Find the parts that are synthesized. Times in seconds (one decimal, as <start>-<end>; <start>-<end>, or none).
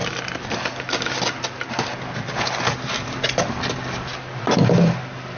none